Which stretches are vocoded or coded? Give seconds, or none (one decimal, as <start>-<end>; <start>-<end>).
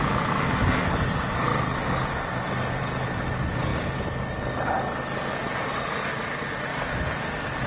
none